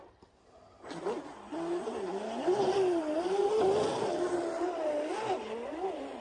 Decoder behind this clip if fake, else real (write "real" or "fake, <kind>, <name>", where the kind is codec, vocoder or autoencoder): real